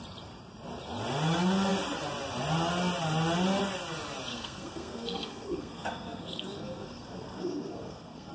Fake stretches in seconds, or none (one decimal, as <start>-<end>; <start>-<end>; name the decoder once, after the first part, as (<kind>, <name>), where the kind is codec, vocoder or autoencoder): 4.3-8.3 (codec, SNAC)